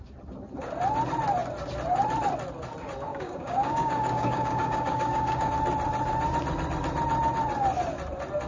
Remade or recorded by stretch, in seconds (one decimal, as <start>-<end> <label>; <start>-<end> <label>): 0.0-3.1 recorded; 3.1-5.5 remade; 5.5-8.5 recorded